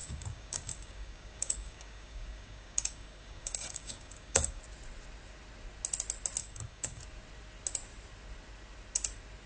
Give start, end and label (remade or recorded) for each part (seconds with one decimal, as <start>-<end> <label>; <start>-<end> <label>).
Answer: 0.0-4.6 remade; 4.6-6.4 recorded; 6.4-7.0 remade; 7.0-9.5 recorded

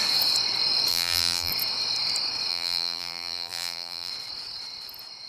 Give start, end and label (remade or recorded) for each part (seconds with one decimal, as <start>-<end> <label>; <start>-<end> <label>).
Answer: 0.0-0.9 recorded; 0.9-1.5 remade; 1.5-2.5 recorded; 2.5-4.1 remade; 4.1-5.3 recorded